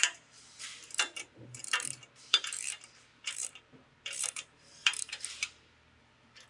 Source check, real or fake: fake